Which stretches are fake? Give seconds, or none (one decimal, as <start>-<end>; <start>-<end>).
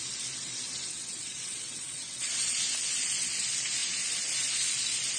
0.9-2.3